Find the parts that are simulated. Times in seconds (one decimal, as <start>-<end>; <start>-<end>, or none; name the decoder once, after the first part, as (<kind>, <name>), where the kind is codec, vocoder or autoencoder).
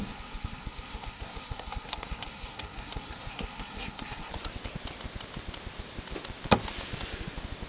0.0-4.3 (codec, SNAC)